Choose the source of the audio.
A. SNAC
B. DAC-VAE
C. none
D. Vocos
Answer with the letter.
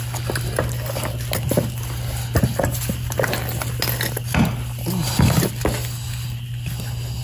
C